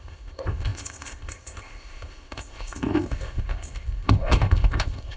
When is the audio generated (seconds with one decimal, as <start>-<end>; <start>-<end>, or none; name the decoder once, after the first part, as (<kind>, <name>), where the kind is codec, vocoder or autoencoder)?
0.0-5.2 (codec, ZipCodec)